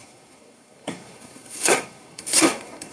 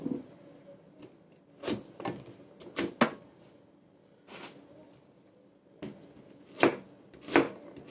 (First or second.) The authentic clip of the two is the second